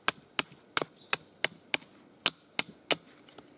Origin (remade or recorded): recorded